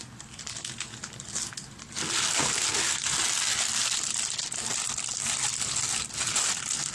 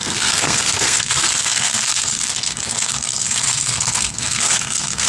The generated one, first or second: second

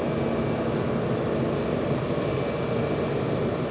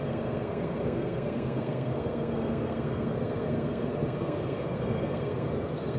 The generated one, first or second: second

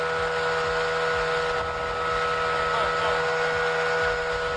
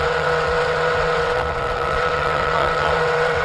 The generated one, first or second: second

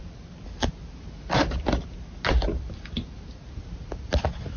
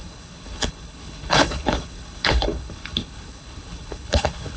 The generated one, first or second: second